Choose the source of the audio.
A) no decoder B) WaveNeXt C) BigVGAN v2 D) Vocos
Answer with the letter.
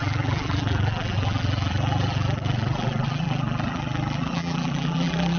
C